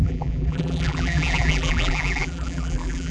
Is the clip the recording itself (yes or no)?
no